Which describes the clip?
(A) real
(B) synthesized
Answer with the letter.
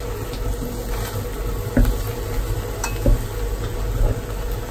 A